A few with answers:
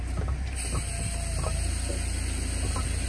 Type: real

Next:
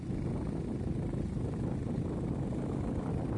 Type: real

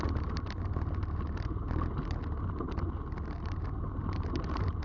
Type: real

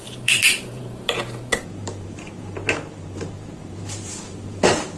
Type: fake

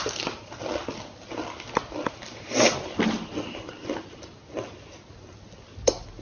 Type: real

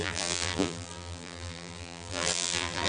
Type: fake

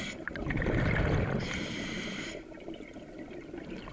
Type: real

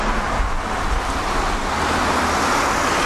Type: real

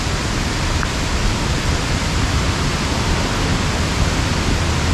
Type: real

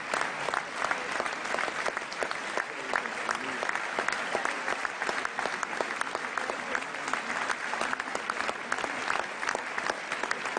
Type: real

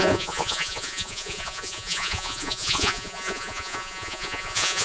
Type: fake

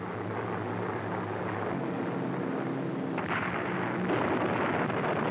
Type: real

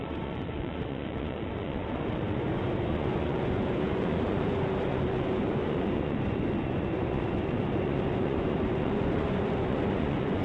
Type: fake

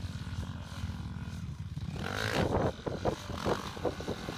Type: real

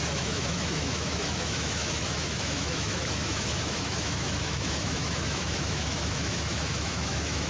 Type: fake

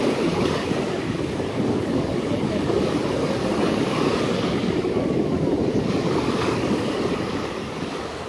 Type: fake